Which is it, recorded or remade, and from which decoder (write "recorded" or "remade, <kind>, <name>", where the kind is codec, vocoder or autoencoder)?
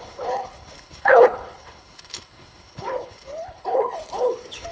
remade, codec, HILCodec